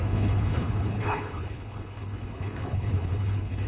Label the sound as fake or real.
fake